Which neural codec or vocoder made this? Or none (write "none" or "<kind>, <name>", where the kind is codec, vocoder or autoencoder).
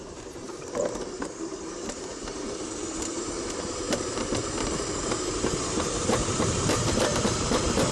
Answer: vocoder, BigVGAN v2